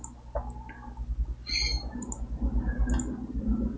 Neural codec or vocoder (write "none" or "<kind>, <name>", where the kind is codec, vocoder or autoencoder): none